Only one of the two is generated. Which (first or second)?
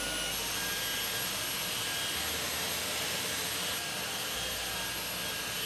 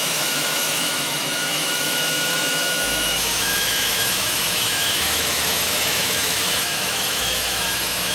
second